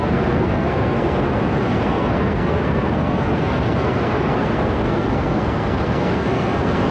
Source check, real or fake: fake